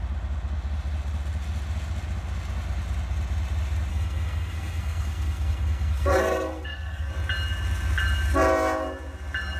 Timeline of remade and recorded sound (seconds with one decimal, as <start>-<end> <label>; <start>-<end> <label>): 0.0-3.9 recorded; 3.9-7.1 remade; 7.1-9.6 recorded